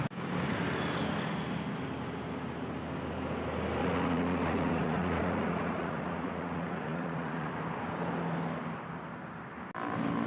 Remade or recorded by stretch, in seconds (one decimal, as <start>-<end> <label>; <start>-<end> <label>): 0.0-3.8 recorded; 3.8-7.5 remade; 7.5-10.3 recorded